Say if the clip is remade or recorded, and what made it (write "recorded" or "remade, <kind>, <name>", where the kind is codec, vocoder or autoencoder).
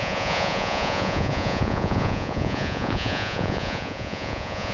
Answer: remade, vocoder, Vocos